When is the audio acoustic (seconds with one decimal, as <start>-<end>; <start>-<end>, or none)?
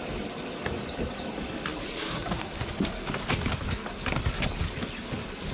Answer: 0.0-5.5